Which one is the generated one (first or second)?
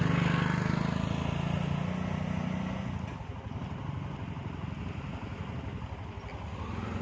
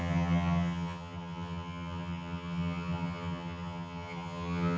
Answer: second